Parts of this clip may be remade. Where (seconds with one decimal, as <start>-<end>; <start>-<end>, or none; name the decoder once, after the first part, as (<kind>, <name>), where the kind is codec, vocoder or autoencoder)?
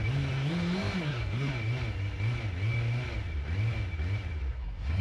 1.0-1.5 (codec, SNAC); 4.5-5.0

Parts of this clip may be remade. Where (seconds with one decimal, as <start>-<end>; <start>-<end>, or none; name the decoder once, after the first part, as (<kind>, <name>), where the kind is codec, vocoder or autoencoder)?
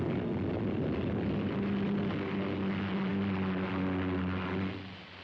none